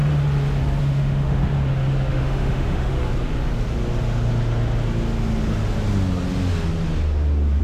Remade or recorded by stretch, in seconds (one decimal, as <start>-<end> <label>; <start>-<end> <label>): 0.0-0.8 recorded; 0.8-1.4 remade; 1.4-2.1 recorded; 2.1-2.9 remade; 2.9-7.6 recorded